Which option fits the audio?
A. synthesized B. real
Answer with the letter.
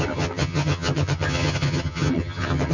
A